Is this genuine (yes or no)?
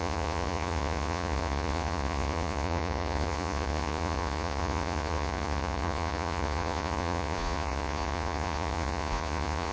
no